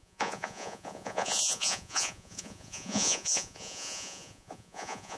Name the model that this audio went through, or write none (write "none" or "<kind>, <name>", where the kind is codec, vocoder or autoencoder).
vocoder, Vocos